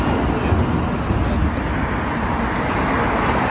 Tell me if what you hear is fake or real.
real